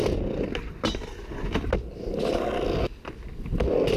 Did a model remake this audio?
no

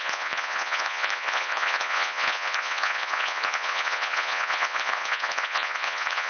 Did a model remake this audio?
yes